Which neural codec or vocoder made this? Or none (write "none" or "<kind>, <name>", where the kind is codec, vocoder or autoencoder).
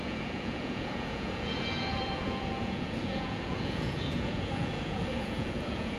vocoder, Vocos